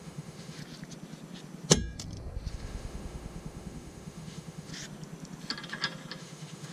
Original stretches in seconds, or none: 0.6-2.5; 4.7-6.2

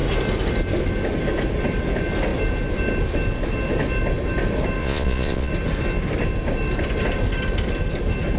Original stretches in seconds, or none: 0.0-4.8; 5.5-8.4

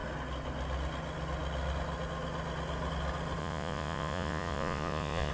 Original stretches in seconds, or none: 0.0-3.4

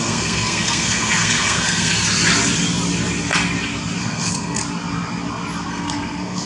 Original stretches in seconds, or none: 1.9-4.0; 4.6-5.7

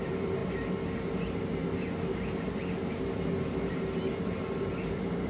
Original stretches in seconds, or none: 0.0-5.3